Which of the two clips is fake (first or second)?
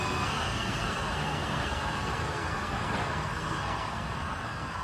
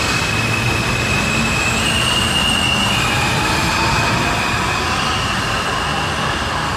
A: first